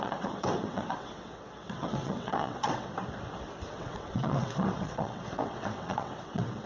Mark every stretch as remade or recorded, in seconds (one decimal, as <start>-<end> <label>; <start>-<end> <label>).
0.0-2.9 remade; 2.9-3.7 recorded; 3.7-6.7 remade